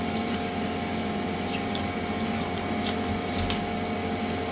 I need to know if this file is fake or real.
real